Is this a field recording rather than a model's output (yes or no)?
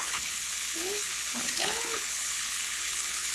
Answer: no